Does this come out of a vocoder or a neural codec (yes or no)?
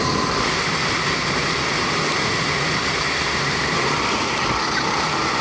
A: no